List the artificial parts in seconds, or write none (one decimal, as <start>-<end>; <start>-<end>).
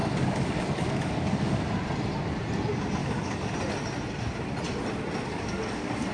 0.0-1.7; 3.0-3.5; 5.3-6.1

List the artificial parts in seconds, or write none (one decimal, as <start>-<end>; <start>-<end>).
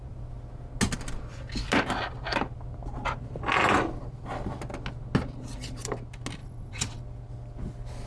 6.4-7.0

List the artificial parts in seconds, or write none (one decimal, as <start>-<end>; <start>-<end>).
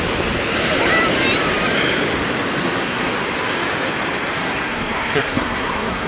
2.6-3.1; 4.4-6.1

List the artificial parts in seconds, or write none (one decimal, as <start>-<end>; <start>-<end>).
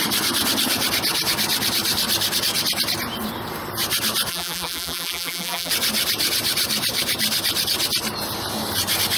4.3-5.7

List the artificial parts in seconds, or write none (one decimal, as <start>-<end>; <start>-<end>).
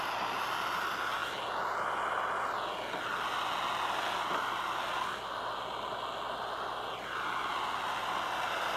none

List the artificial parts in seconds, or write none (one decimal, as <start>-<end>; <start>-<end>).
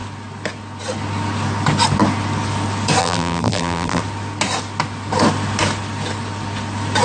3.0-4.0